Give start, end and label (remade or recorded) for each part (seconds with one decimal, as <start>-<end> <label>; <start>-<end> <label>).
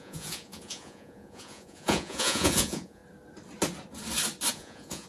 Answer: 0.0-3.0 remade; 3.0-4.5 recorded; 4.5-5.1 remade